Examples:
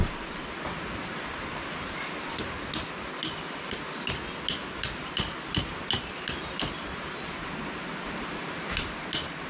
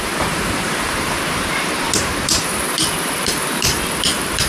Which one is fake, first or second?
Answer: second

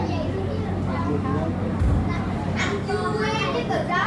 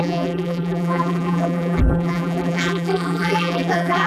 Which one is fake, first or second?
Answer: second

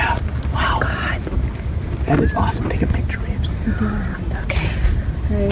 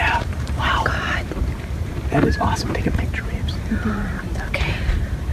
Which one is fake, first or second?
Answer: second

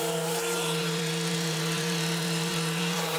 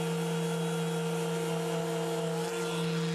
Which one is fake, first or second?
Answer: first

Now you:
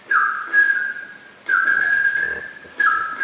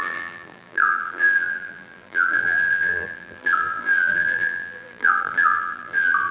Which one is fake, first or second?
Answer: second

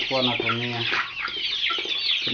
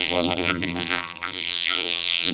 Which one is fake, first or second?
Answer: second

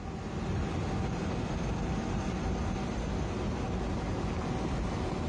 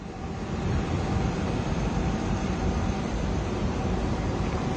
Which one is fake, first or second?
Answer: second